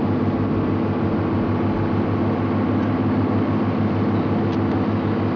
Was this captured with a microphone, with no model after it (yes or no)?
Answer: yes